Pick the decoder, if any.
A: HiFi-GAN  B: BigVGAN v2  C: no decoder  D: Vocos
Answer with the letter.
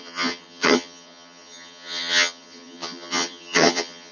A